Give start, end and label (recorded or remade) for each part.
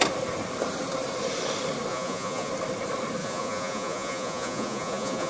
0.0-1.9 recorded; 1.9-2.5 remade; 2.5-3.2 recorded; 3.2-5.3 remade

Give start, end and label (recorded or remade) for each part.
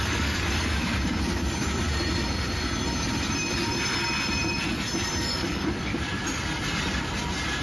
0.0-0.8 remade; 0.8-5.2 recorded; 5.2-5.9 remade; 5.9-7.6 recorded